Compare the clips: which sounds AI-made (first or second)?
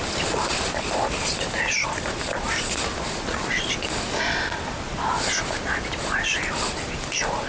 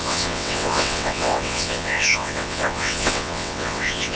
second